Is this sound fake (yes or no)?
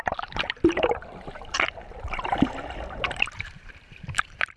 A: yes